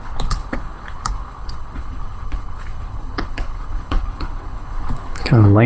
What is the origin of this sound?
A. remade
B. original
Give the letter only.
A